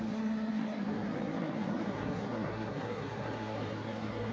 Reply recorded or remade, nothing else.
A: remade